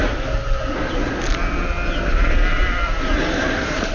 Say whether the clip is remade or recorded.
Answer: recorded